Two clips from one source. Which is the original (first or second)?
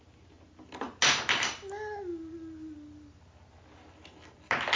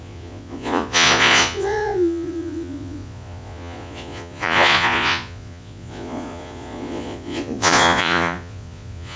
first